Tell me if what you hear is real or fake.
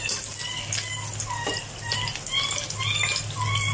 real